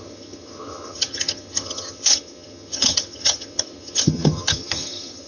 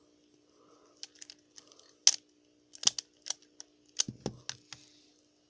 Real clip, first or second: second